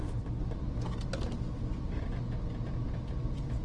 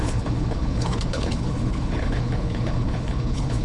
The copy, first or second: second